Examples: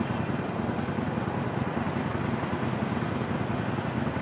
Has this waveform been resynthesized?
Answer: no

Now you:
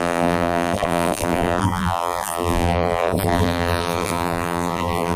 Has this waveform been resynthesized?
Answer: yes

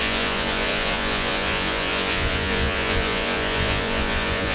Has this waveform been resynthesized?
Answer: yes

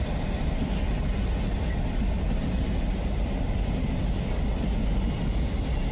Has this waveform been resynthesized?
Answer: no